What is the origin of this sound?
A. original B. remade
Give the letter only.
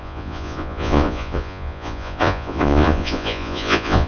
B